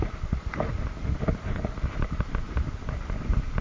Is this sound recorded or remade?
recorded